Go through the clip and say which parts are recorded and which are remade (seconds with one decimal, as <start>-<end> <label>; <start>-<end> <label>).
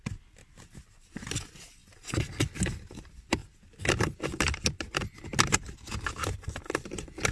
0.0-7.3 recorded